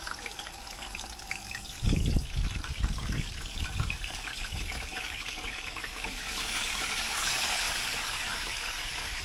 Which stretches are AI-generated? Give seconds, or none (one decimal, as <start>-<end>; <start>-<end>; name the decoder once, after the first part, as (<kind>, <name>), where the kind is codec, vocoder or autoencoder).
0.0-9.2 (codec, DAC)